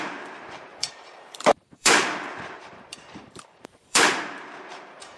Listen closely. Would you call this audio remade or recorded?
remade